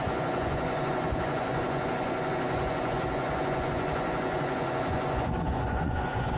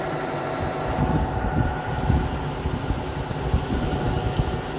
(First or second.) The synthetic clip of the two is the first